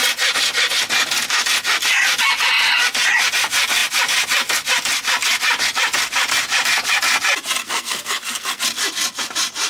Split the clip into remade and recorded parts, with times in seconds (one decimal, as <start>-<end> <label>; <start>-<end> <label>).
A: 0.0-7.6 recorded; 7.6-8.6 remade; 8.6-9.7 recorded